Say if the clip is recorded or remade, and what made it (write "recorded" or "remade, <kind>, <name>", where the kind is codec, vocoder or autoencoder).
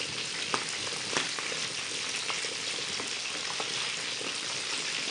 recorded